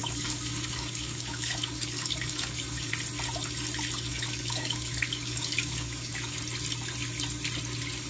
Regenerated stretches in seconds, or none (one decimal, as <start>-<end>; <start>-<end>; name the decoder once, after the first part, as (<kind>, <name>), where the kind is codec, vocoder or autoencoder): 0.0-2.9 (codec, DAC); 4.1-6.4